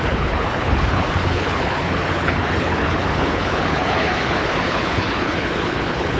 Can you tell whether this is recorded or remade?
remade